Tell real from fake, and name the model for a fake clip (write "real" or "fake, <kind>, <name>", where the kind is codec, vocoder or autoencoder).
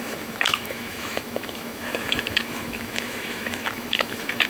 fake, autoencoder, DAC-VAE